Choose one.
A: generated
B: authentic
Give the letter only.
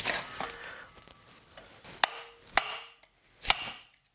B